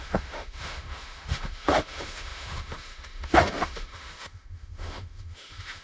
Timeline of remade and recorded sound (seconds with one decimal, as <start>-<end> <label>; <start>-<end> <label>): 0.0-5.8 remade